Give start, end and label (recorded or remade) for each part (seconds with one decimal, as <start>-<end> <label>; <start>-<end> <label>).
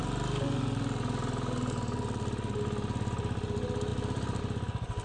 0.0-3.9 recorded; 3.9-4.4 remade; 4.4-5.0 recorded